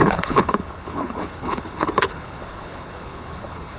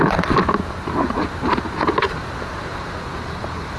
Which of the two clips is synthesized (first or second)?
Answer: first